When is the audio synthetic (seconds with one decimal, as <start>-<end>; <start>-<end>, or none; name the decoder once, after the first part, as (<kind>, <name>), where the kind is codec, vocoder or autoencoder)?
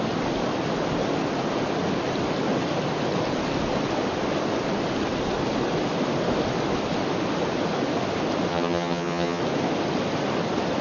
8.5-9.4 (vocoder, HiFi-GAN)